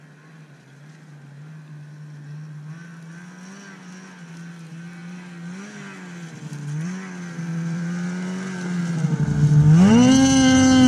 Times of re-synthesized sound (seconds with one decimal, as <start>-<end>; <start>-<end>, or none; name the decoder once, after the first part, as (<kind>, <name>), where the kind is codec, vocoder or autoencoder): 5.0-8.8 (vocoder, BigVGAN v2)